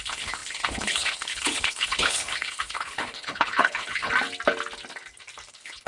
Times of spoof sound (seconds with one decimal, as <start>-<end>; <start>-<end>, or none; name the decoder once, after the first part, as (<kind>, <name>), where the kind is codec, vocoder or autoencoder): 0.0-4.1 (codec, HILCodec); 5.5-5.9